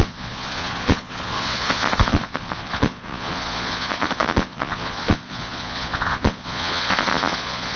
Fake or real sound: fake